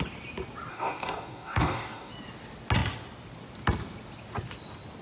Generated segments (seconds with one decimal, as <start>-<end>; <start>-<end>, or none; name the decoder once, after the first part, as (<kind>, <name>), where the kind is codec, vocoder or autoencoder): 0.7-2.1 (codec, DAC)